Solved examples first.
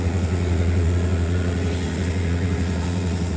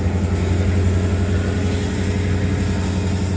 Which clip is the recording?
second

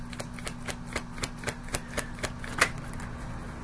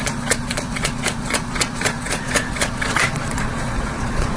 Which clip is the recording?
first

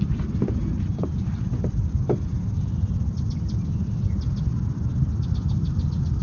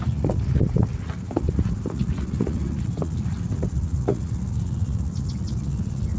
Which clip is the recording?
first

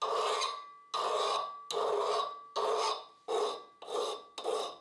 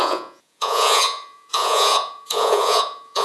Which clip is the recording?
first